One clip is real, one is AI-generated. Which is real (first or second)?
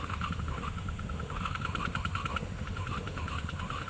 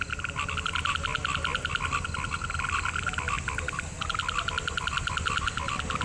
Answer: second